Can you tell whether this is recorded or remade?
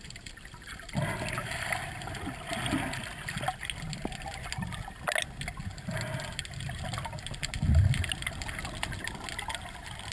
recorded